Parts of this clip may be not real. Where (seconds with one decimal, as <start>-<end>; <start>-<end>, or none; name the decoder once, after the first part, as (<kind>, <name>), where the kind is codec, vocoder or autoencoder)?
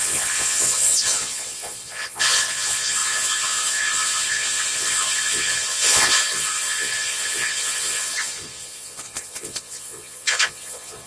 0.0-11.1 (vocoder, Vocos)